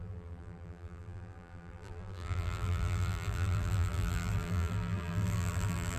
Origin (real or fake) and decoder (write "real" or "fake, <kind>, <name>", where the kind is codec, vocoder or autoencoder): fake, vocoder, BigVGAN v2